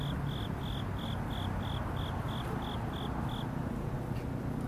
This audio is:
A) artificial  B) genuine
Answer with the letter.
B